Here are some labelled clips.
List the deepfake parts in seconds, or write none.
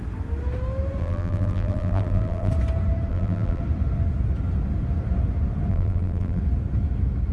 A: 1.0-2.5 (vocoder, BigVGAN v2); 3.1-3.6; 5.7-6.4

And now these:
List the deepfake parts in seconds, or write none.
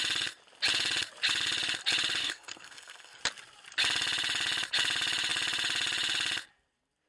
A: 2.2-3.2 (codec, SNAC)